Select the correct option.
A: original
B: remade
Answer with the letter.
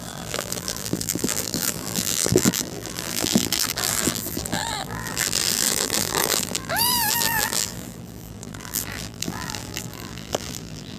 B